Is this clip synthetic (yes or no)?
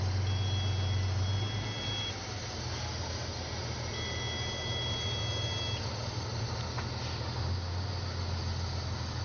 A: no